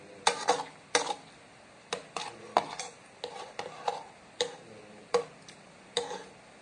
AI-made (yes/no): no